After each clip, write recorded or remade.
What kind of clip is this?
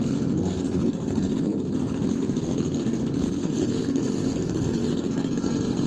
remade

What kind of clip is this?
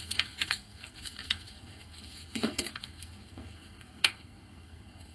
remade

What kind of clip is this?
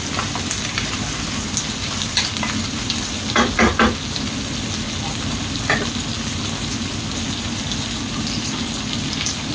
recorded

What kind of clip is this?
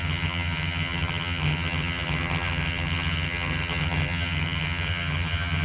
remade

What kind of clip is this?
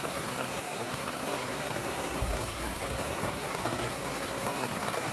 remade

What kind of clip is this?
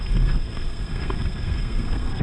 remade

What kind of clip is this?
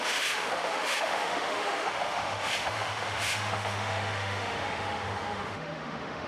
remade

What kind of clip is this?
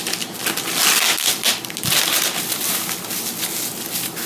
recorded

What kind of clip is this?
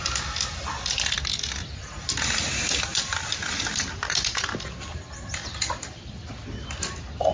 recorded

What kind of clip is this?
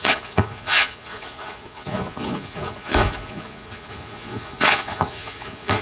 remade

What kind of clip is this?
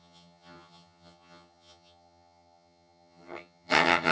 remade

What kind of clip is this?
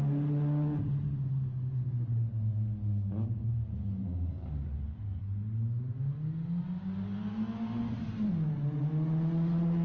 recorded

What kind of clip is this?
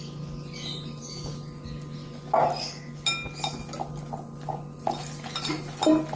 recorded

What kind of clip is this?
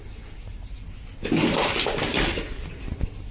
recorded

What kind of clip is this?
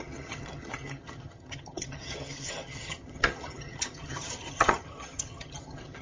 remade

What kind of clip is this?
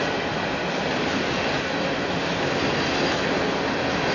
recorded